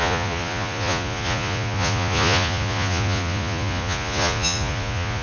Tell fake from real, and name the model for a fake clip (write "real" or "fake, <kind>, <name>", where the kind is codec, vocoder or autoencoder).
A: fake, vocoder, Vocos